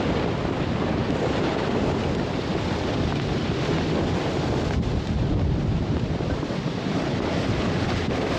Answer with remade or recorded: recorded